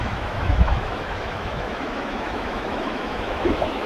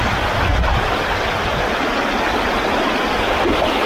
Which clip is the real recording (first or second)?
second